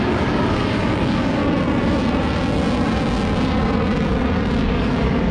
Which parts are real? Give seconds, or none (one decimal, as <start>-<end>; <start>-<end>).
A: 1.4-4.6